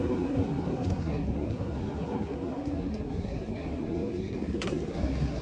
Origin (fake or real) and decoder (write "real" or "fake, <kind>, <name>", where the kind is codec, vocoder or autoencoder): fake, codec, SNAC